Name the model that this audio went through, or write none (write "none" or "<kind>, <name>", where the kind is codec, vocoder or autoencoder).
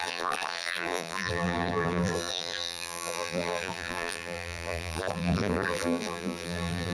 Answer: vocoder, BigVGAN v2